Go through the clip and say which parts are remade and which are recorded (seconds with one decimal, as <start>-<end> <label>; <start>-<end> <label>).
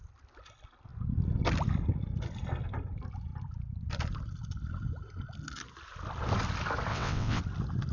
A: 0.0-6.9 recorded; 6.9-7.4 remade; 7.4-7.9 recorded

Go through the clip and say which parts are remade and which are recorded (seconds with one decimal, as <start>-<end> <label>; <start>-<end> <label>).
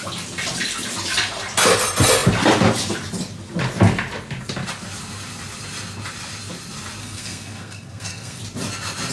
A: 0.0-7.0 recorded; 7.0-8.4 remade; 8.4-9.1 recorded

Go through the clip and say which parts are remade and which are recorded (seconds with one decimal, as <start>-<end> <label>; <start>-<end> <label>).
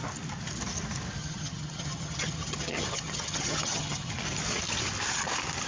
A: 0.0-1.2 recorded; 1.2-4.1 remade; 4.1-5.7 recorded